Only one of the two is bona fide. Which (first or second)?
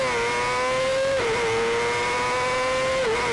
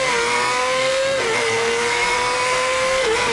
first